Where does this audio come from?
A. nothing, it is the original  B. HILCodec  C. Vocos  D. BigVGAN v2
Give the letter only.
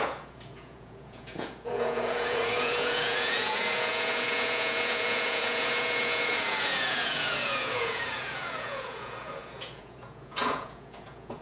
C